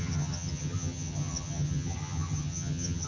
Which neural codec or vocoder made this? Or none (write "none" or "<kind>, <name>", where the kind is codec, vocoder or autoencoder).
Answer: vocoder, HiFi-GAN